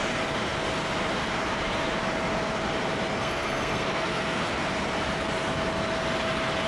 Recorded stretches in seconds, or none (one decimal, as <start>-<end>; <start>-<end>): 0.0-3.2; 4.7-6.7